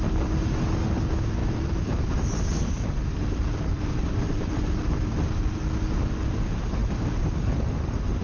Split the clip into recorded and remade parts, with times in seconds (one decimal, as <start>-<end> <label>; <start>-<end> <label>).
0.0-1.4 recorded; 1.4-5.4 remade; 5.4-6.8 recorded; 6.8-7.7 remade; 7.7-8.2 recorded